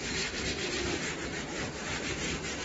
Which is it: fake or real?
fake